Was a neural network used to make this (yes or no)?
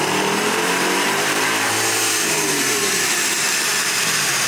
yes